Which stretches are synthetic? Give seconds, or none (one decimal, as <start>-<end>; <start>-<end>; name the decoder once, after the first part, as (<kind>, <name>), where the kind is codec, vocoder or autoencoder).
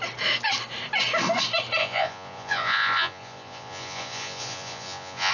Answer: 1.8-5.3 (vocoder, Vocos)